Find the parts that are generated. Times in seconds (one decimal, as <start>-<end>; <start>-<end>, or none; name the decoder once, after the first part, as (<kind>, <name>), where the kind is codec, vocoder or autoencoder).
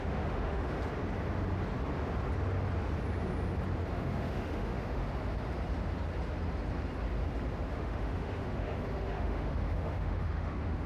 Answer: 0.0-0.8 (autoencoder, DAC-VAE); 3.9-5.0; 7.7-10.9